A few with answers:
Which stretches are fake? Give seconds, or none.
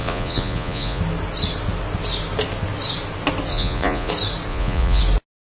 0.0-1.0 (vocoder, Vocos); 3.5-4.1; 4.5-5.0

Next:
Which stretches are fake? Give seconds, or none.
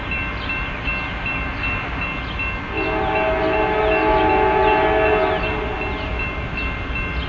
none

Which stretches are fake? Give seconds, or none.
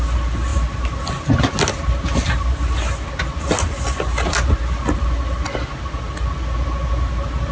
none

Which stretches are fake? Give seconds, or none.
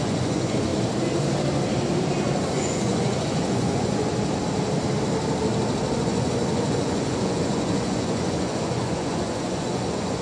0.0-0.7 (vocoder, Vocos); 2.5-4.1; 6.0-10.2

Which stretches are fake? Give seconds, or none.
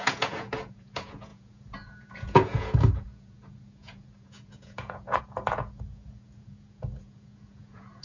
0.0-8.0 (vocoder, Vocos)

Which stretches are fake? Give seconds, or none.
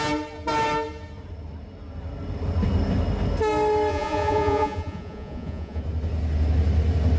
3.9-5.8 (vocoder, Vocos)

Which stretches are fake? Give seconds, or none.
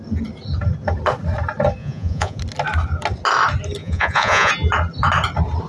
1.8-2.4 (vocoder, Vocos); 3.8-4.5